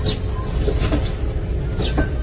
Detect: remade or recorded recorded